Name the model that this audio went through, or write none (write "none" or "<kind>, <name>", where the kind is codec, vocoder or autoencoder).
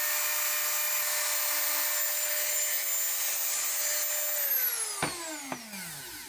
none